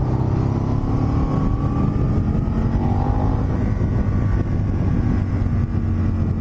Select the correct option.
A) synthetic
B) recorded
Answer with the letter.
B